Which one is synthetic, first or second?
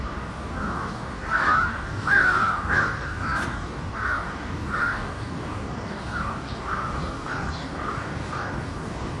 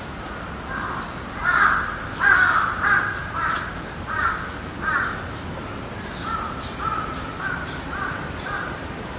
first